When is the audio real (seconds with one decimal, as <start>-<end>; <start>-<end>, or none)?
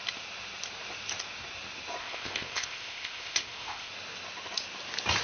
0.0-2.0; 3.9-5.2